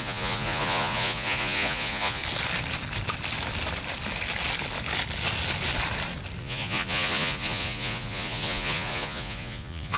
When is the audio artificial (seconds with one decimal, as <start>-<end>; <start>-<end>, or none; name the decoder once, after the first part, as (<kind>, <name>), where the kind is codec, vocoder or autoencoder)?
0.0-2.2 (vocoder, Vocos); 6.4-10.0